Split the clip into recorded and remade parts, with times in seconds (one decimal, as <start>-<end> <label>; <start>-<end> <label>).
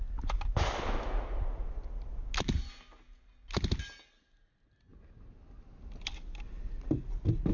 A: 0.0-7.5 recorded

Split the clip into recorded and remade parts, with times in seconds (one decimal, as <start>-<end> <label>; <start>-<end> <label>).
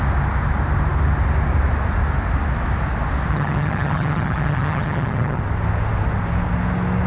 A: 0.0-3.3 recorded; 3.3-5.4 remade; 5.4-7.1 recorded